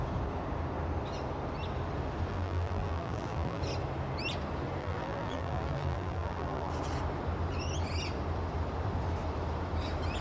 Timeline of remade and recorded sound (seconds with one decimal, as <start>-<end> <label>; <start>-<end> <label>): 0.0-2.3 recorded; 2.3-3.6 remade; 3.6-4.8 recorded; 4.8-6.7 remade; 6.7-10.2 recorded